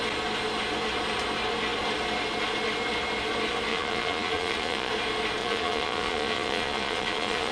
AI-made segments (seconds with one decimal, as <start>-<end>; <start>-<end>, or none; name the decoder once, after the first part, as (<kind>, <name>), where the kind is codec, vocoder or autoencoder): 3.7-4.9 (vocoder, Vocos); 5.4-7.5